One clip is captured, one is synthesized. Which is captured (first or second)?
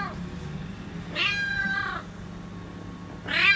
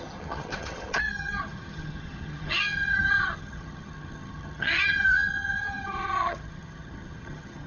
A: first